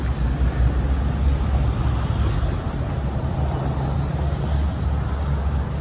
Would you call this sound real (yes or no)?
yes